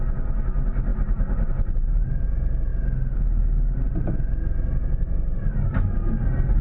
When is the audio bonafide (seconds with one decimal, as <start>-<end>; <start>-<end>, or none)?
0.0-6.6